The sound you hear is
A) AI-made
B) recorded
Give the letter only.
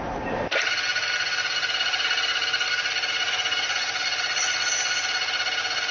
B